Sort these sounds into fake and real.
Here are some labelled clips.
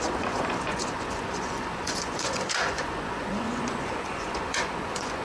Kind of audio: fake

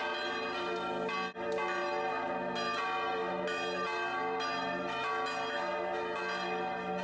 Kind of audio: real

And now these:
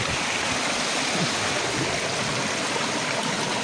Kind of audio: real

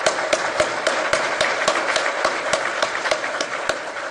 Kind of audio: fake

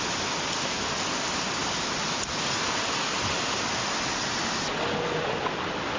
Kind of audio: real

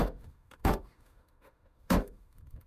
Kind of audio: fake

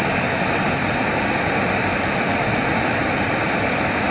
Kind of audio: fake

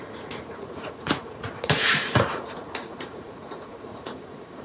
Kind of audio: fake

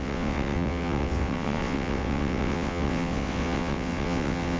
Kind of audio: fake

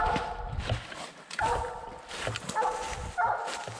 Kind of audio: real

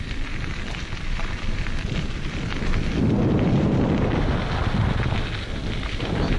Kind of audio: real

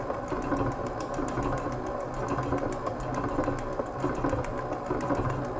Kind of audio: real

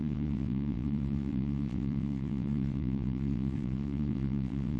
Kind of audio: fake